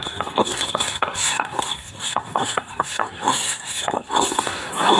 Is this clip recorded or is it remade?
remade